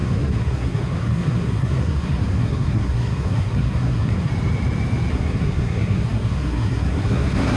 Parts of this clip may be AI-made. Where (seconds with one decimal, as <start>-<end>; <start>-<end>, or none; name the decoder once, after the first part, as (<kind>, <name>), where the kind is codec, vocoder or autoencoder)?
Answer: 0.0-4.3 (codec, SNAC); 5.1-7.6